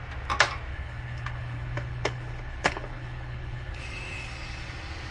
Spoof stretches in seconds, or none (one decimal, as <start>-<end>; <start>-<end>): 0.7-3.8